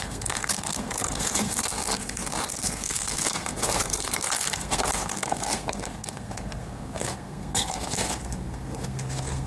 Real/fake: fake